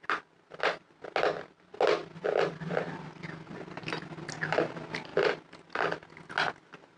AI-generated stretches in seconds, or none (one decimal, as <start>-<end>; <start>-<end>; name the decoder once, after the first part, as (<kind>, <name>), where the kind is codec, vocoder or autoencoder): none